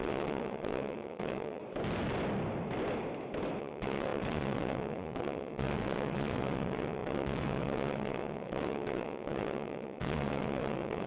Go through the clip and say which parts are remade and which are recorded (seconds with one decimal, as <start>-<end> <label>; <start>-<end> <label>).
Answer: 0.0-1.6 remade; 1.6-3.6 recorded; 3.6-11.1 remade